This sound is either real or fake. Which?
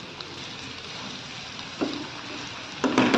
real